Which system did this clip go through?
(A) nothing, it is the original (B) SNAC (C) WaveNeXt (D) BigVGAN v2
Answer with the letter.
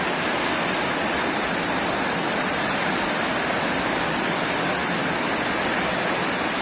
A